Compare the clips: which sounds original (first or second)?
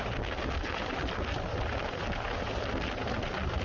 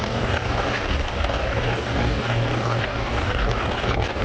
first